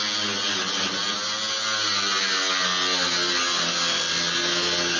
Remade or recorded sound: recorded